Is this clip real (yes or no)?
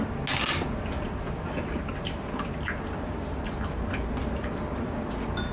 yes